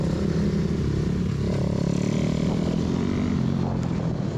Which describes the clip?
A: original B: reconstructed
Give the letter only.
A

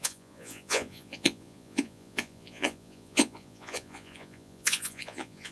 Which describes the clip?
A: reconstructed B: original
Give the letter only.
A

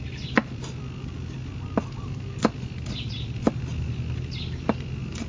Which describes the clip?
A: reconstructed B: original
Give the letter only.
B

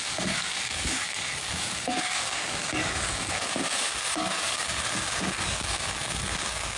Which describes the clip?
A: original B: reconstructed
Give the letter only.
B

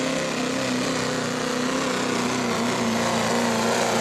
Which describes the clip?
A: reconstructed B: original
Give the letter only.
B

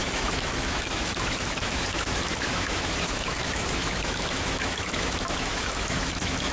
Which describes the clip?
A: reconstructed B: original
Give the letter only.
A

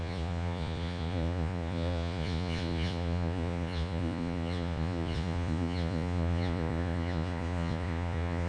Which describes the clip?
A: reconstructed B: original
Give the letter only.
A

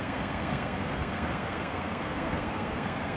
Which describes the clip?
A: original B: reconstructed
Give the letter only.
B